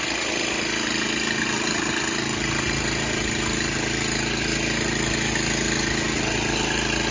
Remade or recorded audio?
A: recorded